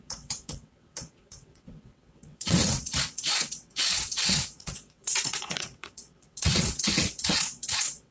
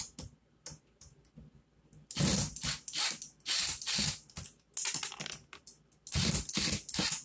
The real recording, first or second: second